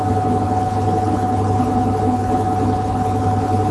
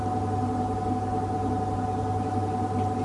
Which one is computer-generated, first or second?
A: first